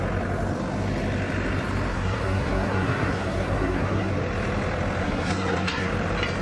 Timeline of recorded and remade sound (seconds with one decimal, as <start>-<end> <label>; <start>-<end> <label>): 0.0-1.9 recorded; 1.9-4.1 remade; 4.1-5.0 recorded; 5.0-5.9 remade; 5.9-6.4 recorded